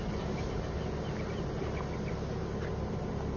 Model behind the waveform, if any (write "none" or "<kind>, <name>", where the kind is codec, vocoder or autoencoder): none